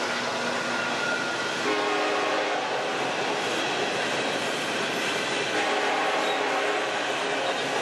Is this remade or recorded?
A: recorded